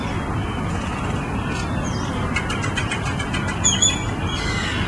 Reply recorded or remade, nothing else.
recorded